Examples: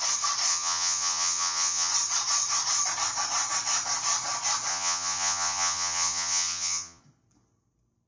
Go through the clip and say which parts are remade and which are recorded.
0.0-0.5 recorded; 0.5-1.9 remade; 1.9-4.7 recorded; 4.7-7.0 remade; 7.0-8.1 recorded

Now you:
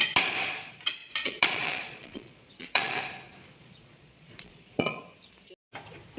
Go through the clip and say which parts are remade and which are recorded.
0.0-1.0 recorded; 1.0-3.0 remade; 3.0-3.5 recorded; 3.5-5.0 remade; 5.0-6.2 recorded